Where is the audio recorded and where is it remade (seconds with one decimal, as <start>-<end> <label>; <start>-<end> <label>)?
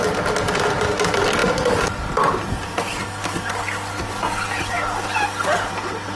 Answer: 0.0-6.2 recorded